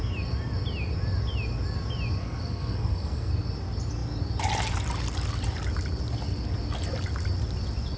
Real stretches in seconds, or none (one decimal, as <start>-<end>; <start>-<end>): 0.0-2.2; 3.3-8.0